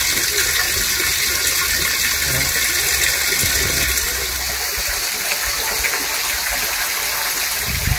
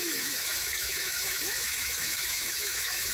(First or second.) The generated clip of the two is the second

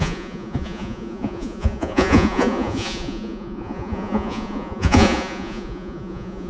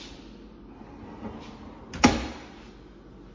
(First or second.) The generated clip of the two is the first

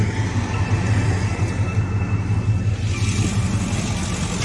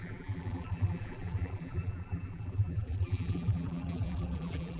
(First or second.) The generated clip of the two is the second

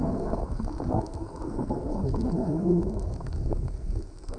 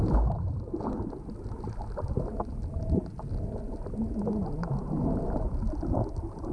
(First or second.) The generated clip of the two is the first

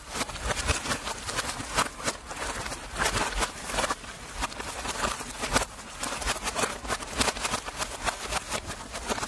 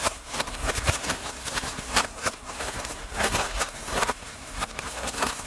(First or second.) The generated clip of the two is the second